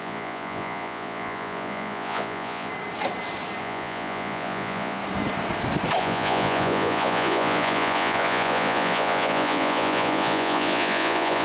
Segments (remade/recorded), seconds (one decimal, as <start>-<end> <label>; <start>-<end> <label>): 0.0-2.7 remade; 2.7-3.6 recorded; 3.6-5.0 remade; 5.0-6.0 recorded; 6.0-11.4 remade